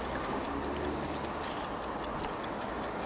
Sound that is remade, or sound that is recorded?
recorded